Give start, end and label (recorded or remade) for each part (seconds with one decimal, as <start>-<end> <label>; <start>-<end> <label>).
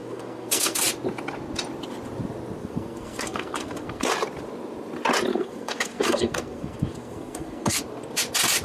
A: 0.0-0.8 remade; 0.8-2.6 recorded; 2.6-4.1 remade; 4.1-5.3 recorded; 5.3-7.8 remade; 7.8-8.6 recorded